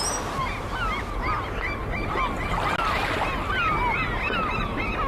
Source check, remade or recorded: recorded